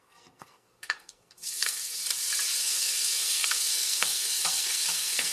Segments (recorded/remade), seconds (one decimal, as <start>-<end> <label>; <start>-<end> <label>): 0.0-2.0 remade; 2.0-2.6 recorded; 2.6-5.3 remade